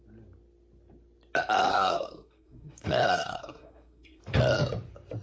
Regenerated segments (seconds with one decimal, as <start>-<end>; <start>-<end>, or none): 1.7-4.2